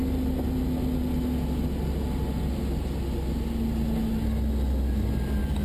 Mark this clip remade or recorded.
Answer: recorded